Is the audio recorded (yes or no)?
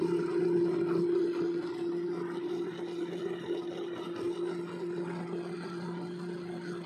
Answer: yes